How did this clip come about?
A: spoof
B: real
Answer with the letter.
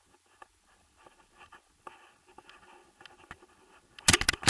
B